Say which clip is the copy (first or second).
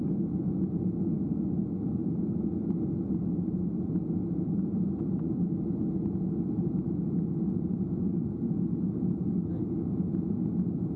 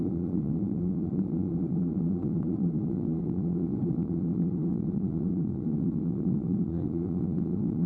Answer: second